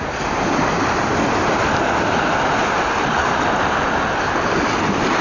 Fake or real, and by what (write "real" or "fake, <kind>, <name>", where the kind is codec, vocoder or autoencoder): real